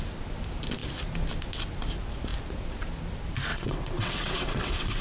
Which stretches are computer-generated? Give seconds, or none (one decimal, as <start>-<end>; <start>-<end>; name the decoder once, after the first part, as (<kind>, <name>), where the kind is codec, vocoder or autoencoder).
3.5-5.0 (vocoder, WaveNeXt)